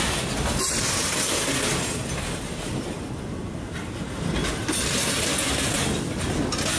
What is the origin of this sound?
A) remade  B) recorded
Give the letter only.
B